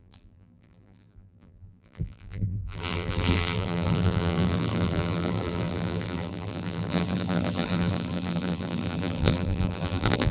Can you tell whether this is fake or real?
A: fake